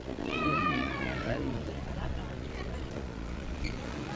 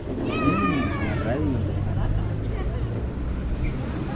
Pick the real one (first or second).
second